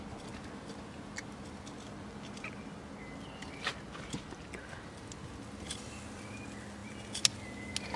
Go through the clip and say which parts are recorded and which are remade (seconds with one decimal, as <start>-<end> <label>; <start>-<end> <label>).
0.0-8.0 recorded